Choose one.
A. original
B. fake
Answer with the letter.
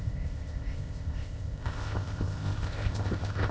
B